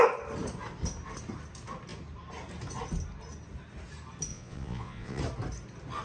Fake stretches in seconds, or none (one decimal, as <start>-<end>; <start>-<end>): 4.3-5.2